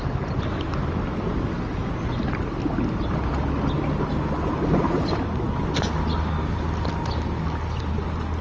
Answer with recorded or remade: recorded